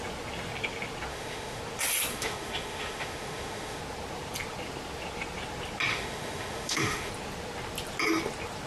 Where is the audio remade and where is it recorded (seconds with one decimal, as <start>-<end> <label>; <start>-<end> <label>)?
0.0-1.1 recorded; 1.1-1.6 remade; 1.6-2.1 recorded; 2.1-3.8 remade; 3.8-5.9 recorded; 5.9-7.1 remade; 7.1-8.7 recorded